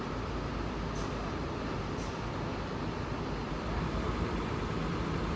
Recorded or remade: recorded